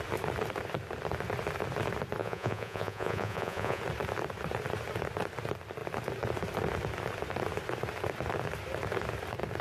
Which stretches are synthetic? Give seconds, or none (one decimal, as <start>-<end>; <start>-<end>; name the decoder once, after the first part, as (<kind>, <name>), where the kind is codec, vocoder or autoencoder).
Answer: 2.2-3.8 (vocoder, Vocos)